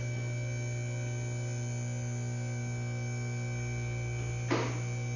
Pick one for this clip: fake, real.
real